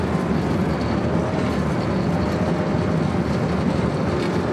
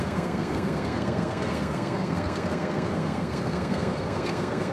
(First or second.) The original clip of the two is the first